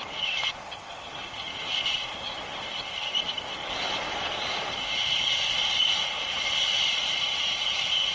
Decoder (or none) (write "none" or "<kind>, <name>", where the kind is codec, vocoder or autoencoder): vocoder, BigVGAN v2